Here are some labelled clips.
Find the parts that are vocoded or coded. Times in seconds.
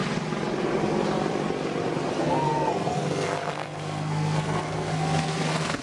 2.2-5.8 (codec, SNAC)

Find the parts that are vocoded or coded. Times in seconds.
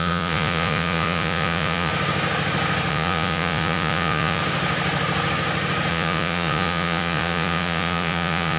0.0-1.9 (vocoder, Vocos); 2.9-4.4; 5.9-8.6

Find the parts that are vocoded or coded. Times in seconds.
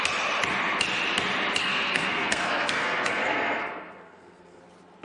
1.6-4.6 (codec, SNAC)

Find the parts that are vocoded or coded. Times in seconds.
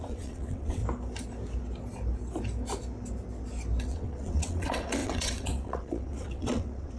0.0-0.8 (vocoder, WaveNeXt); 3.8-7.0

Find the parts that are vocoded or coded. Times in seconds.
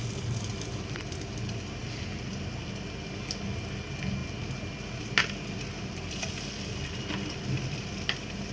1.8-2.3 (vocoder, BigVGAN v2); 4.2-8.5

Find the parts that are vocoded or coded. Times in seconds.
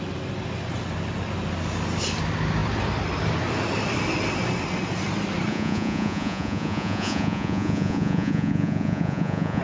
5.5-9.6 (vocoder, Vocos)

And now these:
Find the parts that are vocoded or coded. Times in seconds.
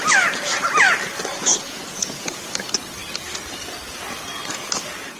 1.5-2.5 (vocoder, Vocos)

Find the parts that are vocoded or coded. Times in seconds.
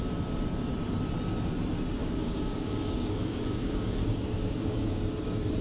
2.0-5.0 (codec, DAC)